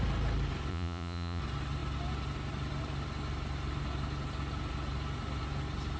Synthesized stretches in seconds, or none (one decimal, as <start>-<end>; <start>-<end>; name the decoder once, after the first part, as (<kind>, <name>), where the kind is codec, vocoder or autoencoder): 0.7-1.4 (vocoder, Vocos)